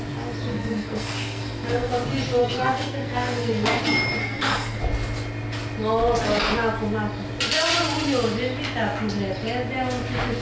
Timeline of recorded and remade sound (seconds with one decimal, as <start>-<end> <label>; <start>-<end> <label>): 0.0-0.5 recorded; 0.5-1.9 remade; 1.9-2.4 recorded; 2.4-3.8 remade; 3.8-4.2 recorded; 4.2-4.8 remade; 4.8-10.4 recorded